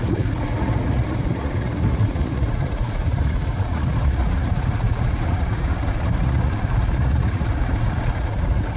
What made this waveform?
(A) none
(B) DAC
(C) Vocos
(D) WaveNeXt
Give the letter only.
C